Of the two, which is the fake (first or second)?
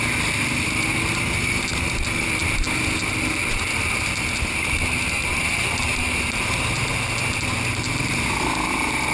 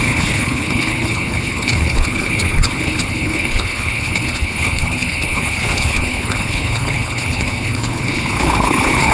second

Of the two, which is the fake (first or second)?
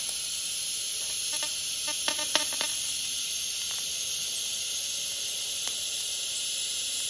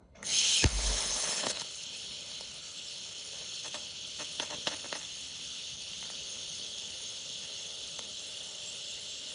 second